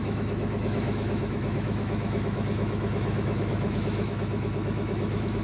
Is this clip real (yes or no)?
no